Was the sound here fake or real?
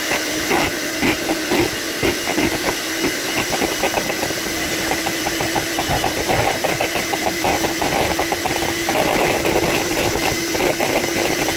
real